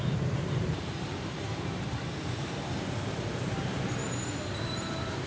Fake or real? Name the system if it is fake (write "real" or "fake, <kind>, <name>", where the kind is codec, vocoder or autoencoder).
fake, vocoder, BigVGAN v2